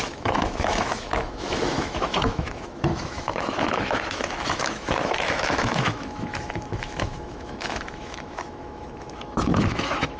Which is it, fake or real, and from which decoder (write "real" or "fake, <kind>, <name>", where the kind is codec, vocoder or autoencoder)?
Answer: fake, autoencoder, DAC-VAE